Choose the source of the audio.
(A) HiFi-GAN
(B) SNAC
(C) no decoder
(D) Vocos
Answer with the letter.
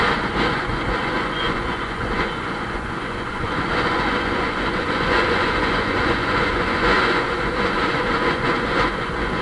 D